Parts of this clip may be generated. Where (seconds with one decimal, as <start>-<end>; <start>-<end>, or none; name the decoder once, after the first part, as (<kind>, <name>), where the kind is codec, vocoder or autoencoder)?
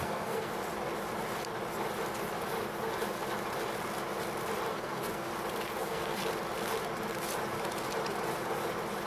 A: 0.0-0.5 (codec, SNAC); 4.7-5.3; 5.8-6.2